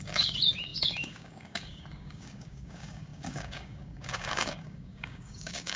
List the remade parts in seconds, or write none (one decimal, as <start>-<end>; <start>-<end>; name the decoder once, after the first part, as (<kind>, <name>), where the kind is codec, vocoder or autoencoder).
0.0-5.8 (codec, DAC)